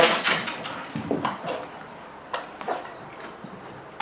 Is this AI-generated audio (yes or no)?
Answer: no